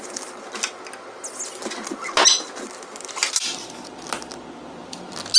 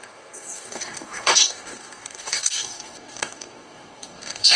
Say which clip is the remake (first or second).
second